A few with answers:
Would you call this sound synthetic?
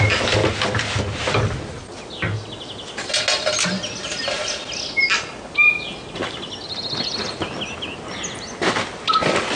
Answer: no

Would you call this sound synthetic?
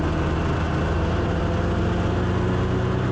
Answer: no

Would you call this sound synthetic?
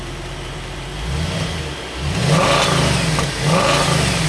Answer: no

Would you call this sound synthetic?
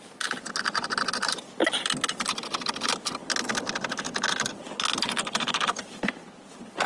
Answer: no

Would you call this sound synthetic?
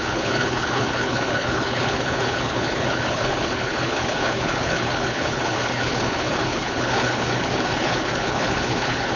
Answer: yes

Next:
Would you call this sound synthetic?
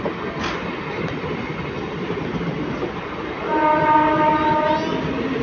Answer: no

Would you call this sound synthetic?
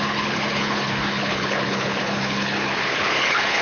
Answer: yes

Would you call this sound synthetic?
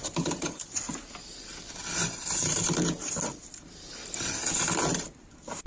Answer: no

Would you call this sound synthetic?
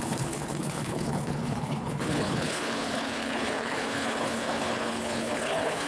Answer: yes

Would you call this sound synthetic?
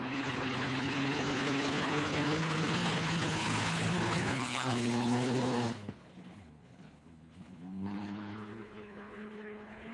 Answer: yes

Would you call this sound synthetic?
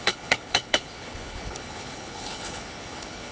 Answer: yes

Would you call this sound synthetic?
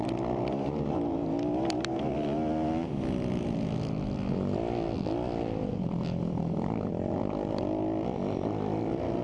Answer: no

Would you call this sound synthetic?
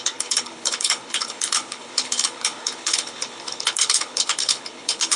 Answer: yes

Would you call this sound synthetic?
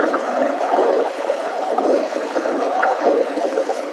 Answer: yes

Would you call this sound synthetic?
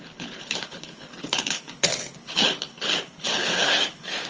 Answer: yes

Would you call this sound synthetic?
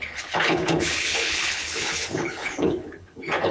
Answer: yes